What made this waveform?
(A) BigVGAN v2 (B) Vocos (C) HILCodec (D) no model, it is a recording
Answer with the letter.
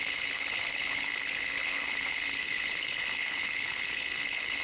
C